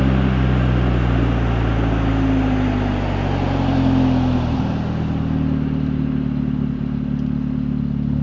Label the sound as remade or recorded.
recorded